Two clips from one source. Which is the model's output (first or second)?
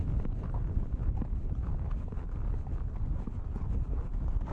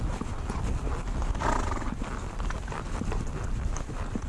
first